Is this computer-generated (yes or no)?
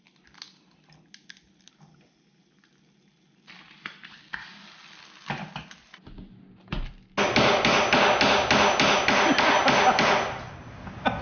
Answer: no